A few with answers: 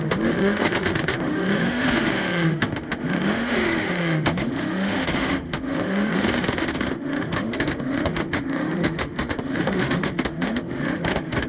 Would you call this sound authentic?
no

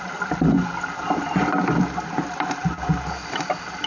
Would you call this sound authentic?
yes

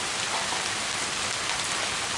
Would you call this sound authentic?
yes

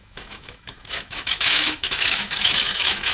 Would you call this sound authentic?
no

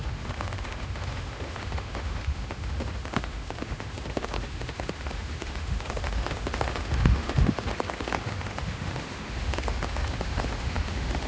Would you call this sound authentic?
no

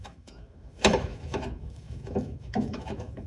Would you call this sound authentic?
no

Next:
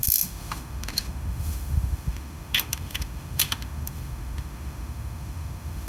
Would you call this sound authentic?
no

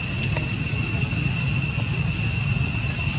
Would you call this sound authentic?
yes